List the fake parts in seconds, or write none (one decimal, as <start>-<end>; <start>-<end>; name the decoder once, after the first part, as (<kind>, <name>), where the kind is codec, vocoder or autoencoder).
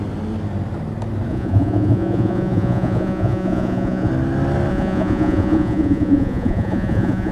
1.3-4.1 (vocoder, Vocos); 4.7-7.3